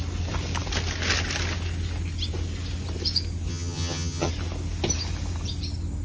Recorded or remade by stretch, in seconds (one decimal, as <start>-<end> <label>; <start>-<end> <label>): 0.0-3.5 recorded; 3.5-4.3 remade; 4.3-6.0 recorded